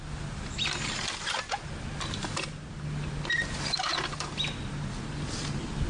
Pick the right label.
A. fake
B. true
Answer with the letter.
B